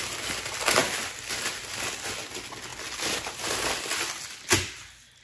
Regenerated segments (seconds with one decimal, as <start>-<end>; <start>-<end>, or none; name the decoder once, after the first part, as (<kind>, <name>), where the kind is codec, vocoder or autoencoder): 2.7-4.3 (vocoder, BigVGAN v2)